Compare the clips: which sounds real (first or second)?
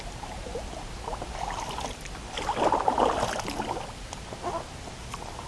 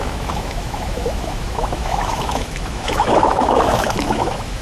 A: first